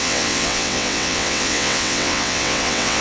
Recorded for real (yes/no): no